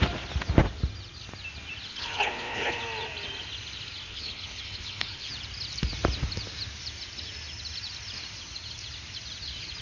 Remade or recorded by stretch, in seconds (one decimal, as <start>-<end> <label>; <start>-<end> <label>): 0.0-1.9 recorded; 1.9-2.8 remade; 2.8-4.1 recorded; 4.1-5.3 remade; 5.3-9.8 recorded